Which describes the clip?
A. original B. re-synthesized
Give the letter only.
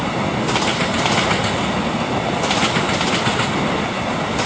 A